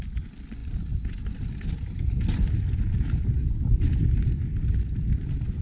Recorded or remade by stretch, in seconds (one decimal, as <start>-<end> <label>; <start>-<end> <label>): 0.0-5.6 recorded